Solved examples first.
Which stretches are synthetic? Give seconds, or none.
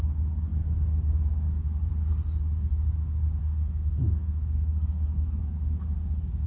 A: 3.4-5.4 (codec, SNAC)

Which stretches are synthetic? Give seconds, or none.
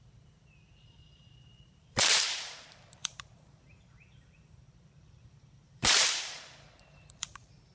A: 0.0-7.7 (vocoder, BigVGAN v2)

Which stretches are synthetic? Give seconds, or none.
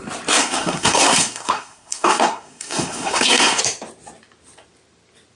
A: 0.4-3.6 (codec, SNAC)